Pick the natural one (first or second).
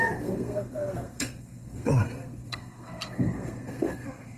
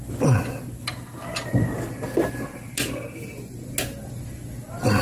second